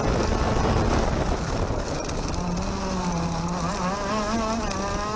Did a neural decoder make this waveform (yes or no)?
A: no